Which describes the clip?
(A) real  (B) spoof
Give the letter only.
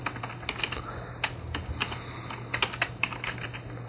A